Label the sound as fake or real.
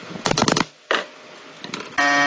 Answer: real